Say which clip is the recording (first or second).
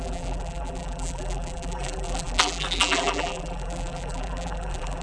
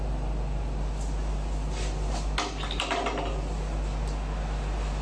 second